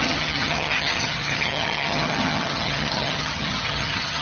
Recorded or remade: remade